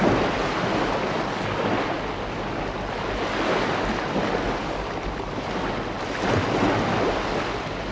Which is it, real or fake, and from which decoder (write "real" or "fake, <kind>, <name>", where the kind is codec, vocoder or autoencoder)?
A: real